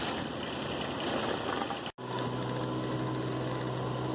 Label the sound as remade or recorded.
recorded